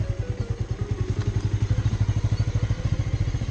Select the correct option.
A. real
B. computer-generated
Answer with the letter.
A